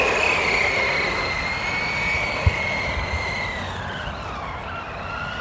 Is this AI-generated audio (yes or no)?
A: no